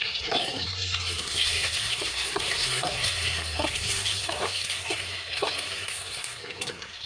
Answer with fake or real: fake